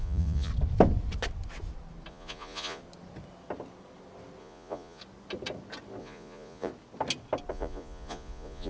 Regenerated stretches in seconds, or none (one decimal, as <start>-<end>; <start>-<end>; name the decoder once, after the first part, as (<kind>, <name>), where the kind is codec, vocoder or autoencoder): 0.0-0.5 (vocoder, Vocos); 2.1-2.8; 4.4-5.0; 6.0-6.7; 7.5-8.7